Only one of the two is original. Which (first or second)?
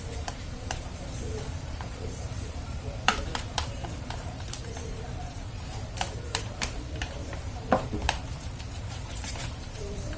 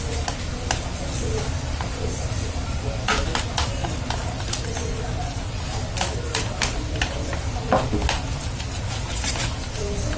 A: second